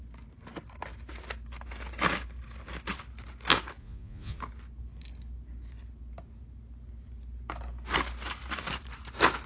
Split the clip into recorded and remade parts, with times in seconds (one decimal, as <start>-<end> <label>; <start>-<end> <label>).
0.0-3.8 recorded; 3.8-4.4 remade; 4.4-9.5 recorded